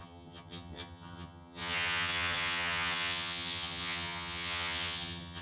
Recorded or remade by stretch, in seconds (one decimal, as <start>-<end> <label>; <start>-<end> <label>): 0.0-5.4 remade